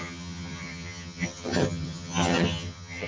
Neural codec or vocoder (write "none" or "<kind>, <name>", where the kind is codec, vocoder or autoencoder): vocoder, HiFi-GAN